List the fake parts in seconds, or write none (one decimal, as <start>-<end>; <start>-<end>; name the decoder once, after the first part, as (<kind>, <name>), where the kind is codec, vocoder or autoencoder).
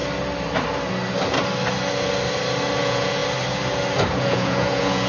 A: 2.8-3.2 (vocoder, Vocos); 4.1-5.1